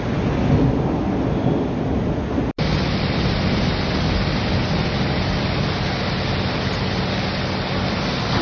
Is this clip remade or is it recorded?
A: recorded